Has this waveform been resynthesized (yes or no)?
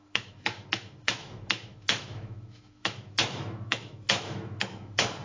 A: yes